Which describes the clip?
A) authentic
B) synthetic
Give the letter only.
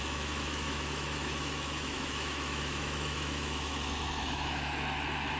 B